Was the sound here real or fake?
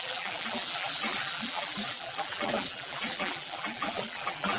fake